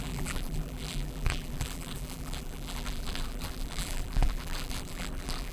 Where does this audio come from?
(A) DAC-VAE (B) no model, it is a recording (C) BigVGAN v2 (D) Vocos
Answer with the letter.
C